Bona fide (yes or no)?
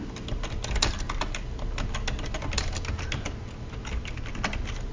yes